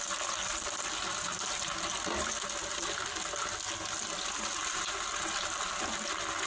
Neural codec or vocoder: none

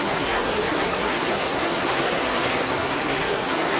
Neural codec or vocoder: codec, SNAC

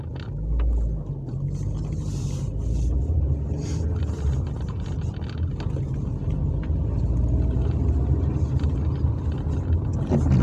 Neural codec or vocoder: none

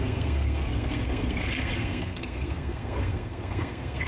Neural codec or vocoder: codec, SNAC